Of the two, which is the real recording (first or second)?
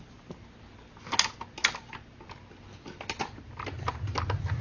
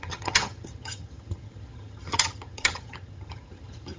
first